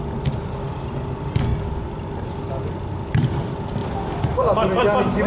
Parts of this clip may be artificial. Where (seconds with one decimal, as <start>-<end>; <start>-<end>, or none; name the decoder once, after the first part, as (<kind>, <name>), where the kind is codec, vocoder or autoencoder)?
none